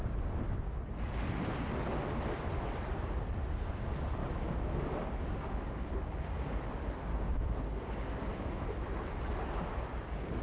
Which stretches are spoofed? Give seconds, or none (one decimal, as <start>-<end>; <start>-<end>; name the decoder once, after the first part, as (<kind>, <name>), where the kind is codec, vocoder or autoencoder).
4.2-6.6 (codec, DAC); 7.1-8.5